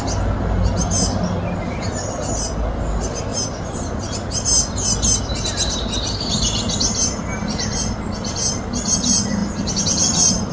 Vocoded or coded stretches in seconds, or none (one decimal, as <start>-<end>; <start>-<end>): none